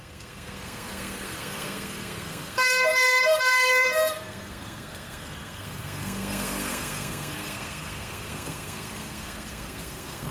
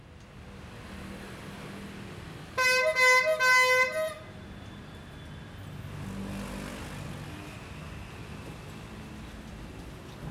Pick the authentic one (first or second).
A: second